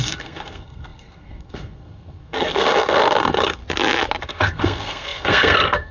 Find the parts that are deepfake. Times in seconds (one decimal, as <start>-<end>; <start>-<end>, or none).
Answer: 0.0-3.6; 4.2-5.9